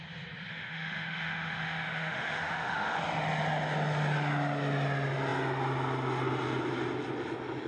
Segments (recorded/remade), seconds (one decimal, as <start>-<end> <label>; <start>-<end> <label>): 0.0-0.5 recorded; 0.5-3.0 remade; 3.0-7.7 recorded